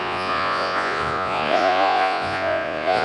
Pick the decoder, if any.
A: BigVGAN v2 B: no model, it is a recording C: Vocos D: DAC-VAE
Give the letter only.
C